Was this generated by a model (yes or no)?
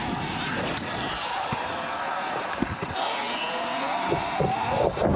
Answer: no